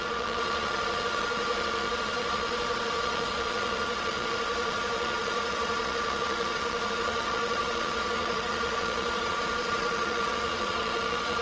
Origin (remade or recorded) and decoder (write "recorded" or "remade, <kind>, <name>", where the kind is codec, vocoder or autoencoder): remade, vocoder, Vocos